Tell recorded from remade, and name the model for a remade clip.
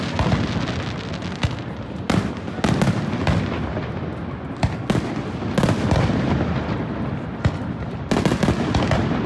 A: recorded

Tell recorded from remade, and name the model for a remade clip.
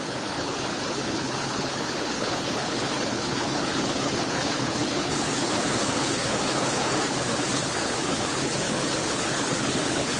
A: remade, codec, HILCodec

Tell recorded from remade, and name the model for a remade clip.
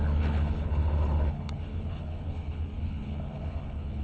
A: remade, codec, HILCodec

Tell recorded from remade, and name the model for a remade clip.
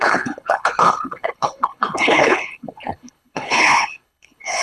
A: remade, codec, HILCodec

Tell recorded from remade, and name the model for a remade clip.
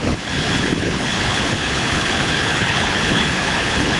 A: remade, codec, HILCodec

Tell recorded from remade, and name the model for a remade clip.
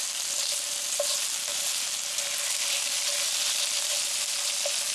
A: recorded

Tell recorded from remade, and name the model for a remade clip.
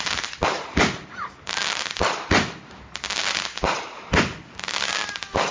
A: recorded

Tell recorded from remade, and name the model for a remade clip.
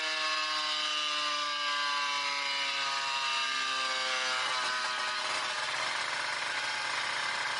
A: recorded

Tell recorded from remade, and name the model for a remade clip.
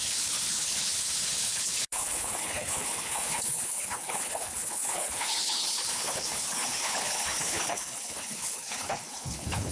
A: remade, codec, HILCodec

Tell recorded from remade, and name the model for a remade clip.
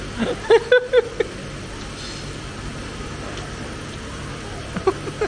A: recorded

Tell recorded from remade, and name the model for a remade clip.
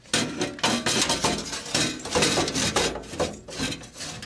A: recorded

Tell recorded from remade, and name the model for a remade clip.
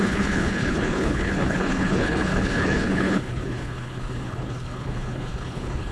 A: remade, codec, HILCodec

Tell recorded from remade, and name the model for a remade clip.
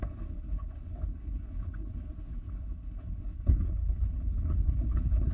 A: remade, codec, HILCodec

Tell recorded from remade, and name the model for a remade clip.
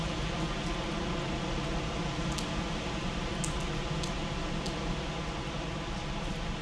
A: recorded